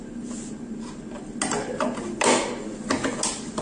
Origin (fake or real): real